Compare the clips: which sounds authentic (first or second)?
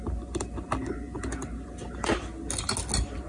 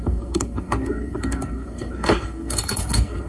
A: first